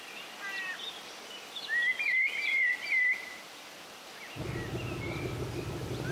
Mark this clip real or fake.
real